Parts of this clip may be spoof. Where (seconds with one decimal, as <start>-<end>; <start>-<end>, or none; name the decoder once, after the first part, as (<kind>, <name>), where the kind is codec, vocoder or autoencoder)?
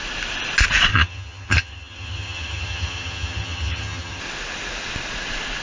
0.9-4.2 (vocoder, HiFi-GAN)